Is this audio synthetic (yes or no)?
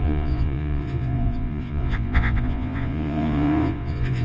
yes